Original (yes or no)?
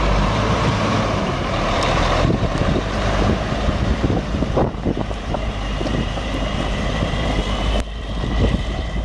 no